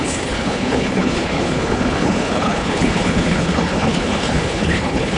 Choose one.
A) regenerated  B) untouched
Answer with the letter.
A